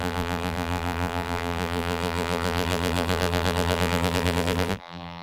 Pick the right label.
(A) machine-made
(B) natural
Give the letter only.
A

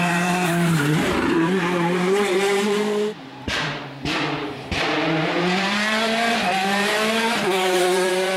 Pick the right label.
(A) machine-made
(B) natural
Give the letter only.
A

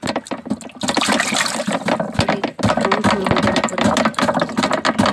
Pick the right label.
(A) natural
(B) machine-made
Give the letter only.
A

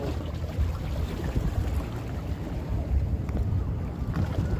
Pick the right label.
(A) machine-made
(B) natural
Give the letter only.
A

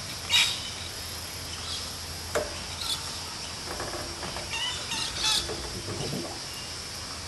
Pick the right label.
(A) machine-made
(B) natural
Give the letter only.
B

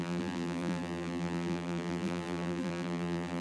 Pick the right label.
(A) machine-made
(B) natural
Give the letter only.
A